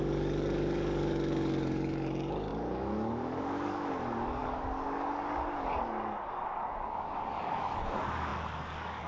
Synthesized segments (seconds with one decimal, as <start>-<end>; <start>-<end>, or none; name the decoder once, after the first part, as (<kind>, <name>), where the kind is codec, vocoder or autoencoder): 0.0-9.1 (codec, DAC)